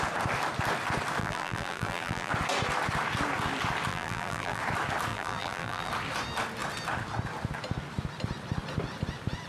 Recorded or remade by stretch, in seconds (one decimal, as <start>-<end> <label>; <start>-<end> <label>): 0.0-1.2 recorded; 1.2-2.3 remade; 2.3-3.9 recorded; 3.9-4.6 remade; 4.6-5.1 recorded; 5.1-5.9 remade; 5.9-9.5 recorded